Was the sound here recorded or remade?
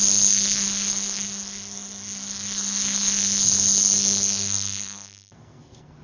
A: remade